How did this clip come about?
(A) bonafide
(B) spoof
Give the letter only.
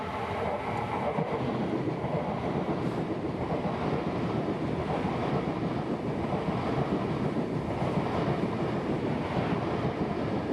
A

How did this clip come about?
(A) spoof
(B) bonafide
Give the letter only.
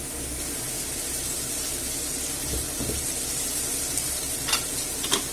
B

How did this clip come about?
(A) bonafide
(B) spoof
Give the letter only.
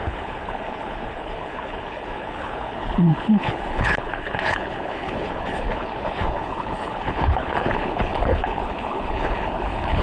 B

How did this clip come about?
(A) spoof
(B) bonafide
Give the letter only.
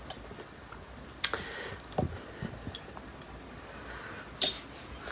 B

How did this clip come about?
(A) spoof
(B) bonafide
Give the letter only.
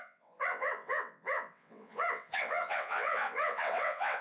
A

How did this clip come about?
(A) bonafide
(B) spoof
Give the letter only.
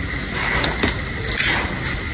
A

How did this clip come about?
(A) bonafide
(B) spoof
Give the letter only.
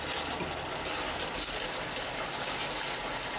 A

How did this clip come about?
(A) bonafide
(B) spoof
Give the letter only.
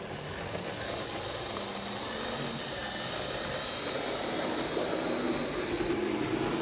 A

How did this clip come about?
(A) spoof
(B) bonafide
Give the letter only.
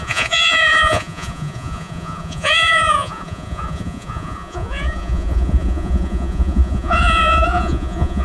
A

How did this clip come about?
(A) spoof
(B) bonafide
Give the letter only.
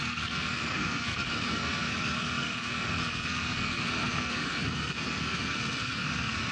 A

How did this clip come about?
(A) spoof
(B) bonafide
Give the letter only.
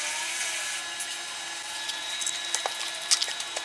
B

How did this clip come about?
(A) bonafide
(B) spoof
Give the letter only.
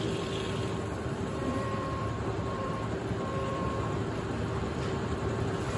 B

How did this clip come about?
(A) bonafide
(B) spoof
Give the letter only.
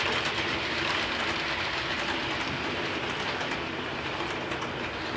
A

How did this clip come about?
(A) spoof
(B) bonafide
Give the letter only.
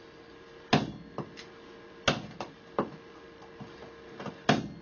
B